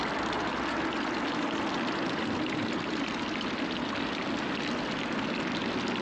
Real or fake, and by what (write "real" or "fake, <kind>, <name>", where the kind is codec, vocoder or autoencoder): real